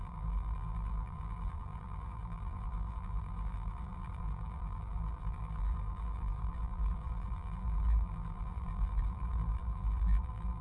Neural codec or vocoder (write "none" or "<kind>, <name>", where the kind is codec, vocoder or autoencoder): vocoder, BigVGAN v2